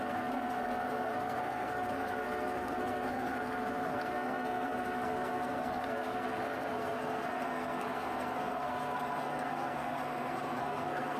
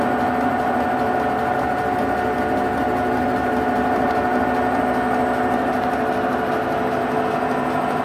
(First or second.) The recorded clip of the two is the second